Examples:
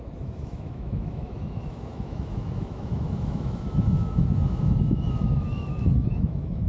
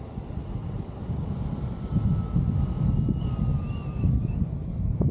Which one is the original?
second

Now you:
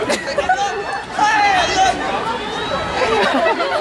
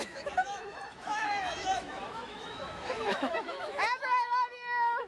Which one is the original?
first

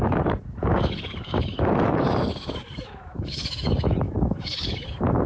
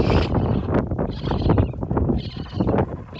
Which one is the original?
second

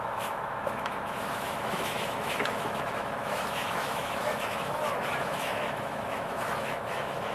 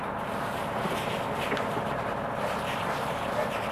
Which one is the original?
second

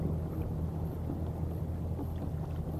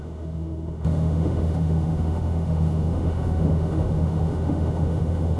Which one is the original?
first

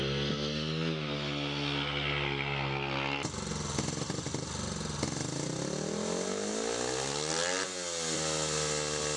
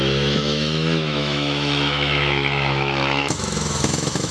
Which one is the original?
first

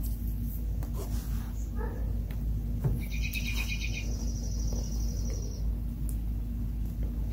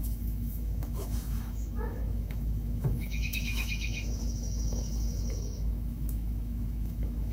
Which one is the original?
first